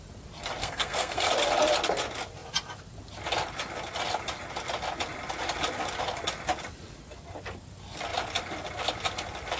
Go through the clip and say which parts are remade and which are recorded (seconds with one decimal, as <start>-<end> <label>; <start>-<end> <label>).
0.0-0.6 recorded; 0.6-1.3 remade; 1.3-9.6 recorded